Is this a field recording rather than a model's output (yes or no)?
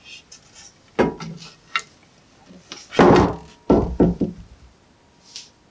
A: yes